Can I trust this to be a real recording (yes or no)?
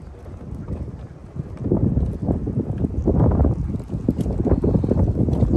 yes